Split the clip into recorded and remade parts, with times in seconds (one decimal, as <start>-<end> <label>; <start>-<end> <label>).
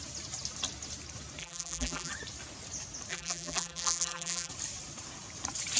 0.0-1.4 recorded; 1.4-2.1 remade; 2.1-3.1 recorded; 3.1-4.5 remade; 4.5-5.8 recorded